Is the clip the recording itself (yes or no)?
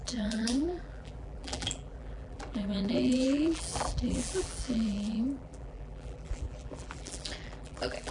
no